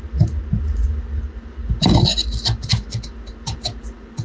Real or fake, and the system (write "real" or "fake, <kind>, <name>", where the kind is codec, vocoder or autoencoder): real